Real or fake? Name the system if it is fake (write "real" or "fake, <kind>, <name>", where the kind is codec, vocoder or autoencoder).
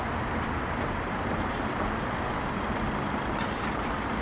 real